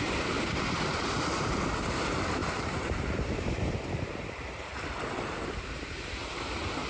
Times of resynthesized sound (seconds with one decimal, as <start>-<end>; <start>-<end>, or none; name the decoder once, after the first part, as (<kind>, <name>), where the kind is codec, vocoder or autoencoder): 0.0-4.7 (vocoder, BigVGAN v2); 5.2-6.9